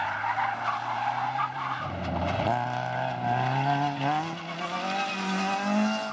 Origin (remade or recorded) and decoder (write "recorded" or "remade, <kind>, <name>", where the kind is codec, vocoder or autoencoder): recorded